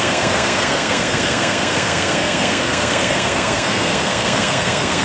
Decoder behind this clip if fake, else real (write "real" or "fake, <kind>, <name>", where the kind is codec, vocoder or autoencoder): fake, codec, SNAC